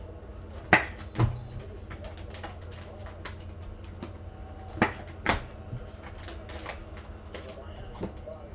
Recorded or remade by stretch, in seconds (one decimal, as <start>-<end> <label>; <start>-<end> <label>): 0.0-8.5 recorded